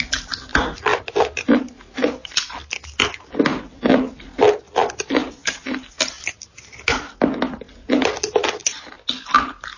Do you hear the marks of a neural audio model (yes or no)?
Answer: no